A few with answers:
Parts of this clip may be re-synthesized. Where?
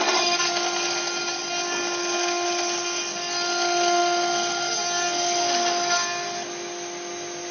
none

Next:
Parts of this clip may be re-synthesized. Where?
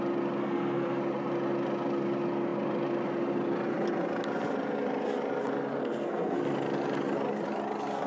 0.4-1.0 (codec, SNAC); 5.8-6.4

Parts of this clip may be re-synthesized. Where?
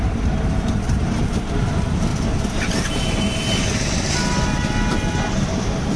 0.0-2.1 (vocoder, BigVGAN v2)